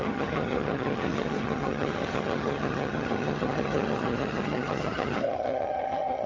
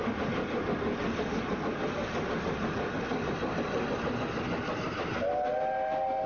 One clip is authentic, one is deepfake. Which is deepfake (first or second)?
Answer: first